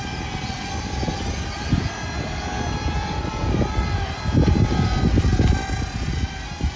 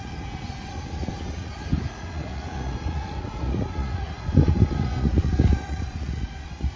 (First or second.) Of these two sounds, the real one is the first